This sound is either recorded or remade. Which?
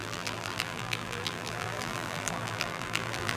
remade